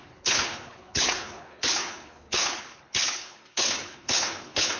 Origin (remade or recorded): remade